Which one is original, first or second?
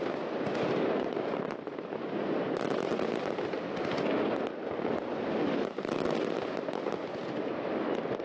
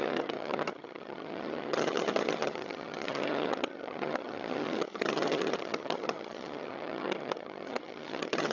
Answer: first